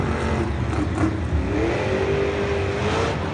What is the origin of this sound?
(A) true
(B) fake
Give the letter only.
A